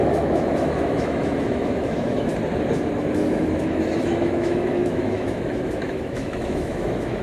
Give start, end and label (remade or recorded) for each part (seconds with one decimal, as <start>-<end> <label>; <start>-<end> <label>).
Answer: 0.0-2.3 remade; 2.3-3.0 recorded; 3.0-7.2 remade